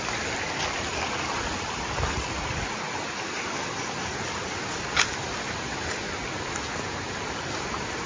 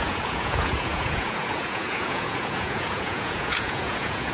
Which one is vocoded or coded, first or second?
second